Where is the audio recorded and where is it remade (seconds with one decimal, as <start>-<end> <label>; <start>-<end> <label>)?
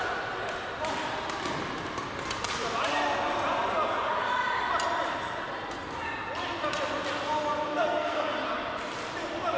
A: 0.0-7.7 recorded; 7.7-8.3 remade; 8.3-9.6 recorded